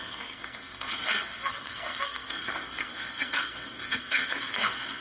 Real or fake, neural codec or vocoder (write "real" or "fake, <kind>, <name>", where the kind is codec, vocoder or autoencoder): fake, codec, SNAC